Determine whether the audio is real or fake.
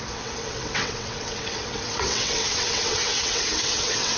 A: fake